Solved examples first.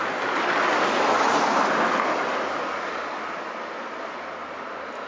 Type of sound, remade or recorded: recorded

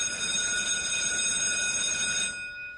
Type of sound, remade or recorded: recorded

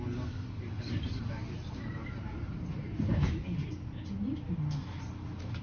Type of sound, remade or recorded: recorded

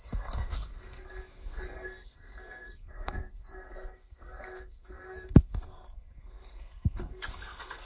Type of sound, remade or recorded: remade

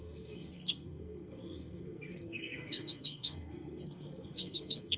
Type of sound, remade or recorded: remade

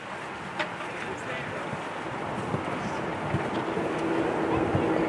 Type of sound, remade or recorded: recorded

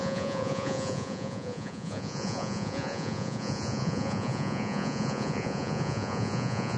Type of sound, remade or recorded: remade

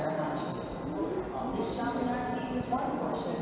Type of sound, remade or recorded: recorded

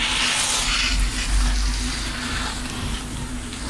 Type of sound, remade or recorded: recorded